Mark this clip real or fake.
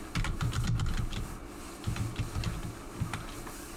real